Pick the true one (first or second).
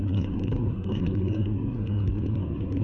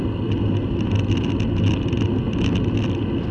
second